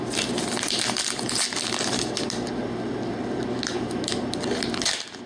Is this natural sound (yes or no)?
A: yes